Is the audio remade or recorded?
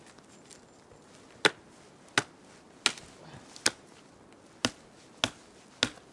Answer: recorded